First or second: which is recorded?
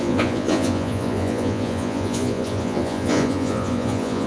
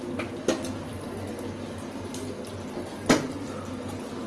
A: second